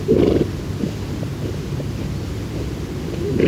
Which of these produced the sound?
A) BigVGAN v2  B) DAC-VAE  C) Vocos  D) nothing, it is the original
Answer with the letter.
D